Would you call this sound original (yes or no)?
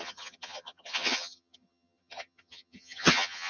no